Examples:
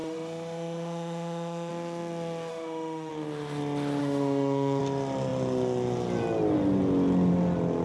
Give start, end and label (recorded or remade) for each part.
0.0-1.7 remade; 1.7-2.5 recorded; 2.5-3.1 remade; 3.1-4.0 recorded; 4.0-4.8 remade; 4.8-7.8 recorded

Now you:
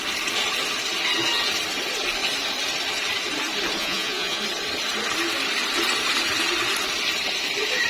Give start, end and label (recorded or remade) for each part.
0.0-3.8 recorded; 3.8-4.4 remade; 4.4-7.9 recorded

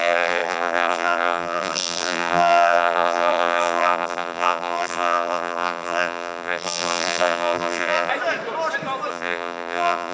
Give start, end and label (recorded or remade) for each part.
0.0-8.1 remade; 8.1-9.1 recorded; 9.1-10.1 remade

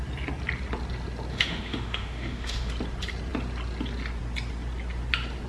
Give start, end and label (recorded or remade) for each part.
0.0-1.3 recorded; 1.3-2.7 remade; 2.7-5.5 recorded

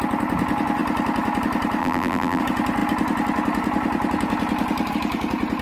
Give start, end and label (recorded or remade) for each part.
0.0-1.8 recorded; 1.8-2.4 remade; 2.4-5.6 recorded